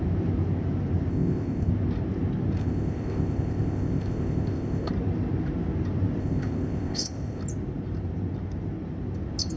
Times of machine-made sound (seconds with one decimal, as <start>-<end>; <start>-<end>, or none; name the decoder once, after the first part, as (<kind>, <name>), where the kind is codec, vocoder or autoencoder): 1.1-1.7 (codec, ZipCodec); 2.6-4.9; 6.2-7.4